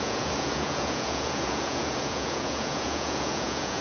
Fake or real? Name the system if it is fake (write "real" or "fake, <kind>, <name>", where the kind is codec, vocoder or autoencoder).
fake, vocoder, Vocos